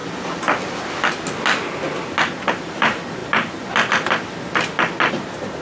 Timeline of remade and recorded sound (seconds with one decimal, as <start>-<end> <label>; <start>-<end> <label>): 0.0-2.5 recorded; 2.5-3.2 remade; 3.2-5.1 recorded; 5.1-5.6 remade